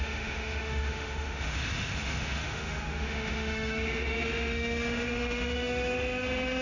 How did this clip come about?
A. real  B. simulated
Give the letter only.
B